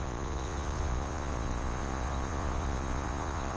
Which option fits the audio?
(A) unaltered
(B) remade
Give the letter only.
B